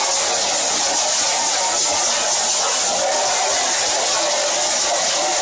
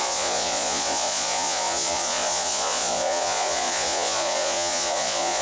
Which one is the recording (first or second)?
first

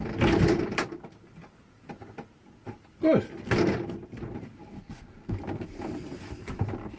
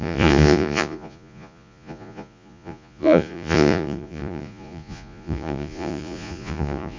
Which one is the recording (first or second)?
first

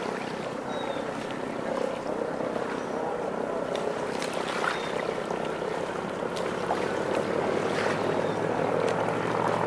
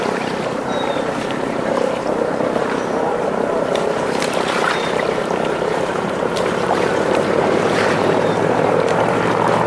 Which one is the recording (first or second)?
first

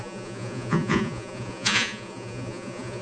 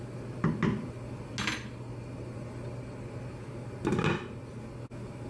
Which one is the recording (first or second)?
second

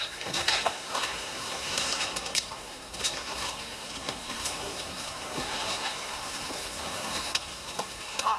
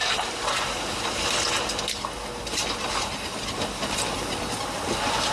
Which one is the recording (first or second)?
second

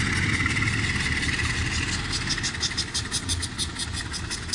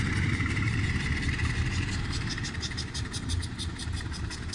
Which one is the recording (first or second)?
first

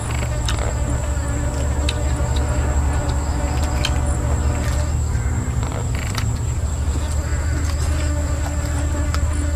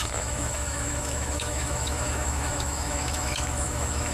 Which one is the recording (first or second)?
first